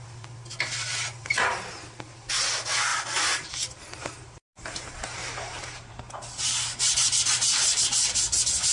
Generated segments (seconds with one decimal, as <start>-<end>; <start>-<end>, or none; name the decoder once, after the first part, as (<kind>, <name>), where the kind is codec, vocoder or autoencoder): 2.9-8.1 (vocoder, BigVGAN v2)